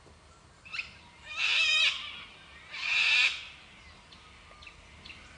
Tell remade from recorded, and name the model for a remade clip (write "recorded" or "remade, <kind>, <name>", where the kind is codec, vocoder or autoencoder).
recorded